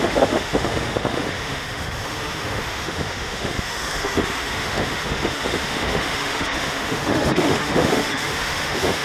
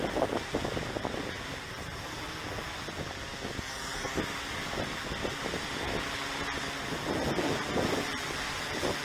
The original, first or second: second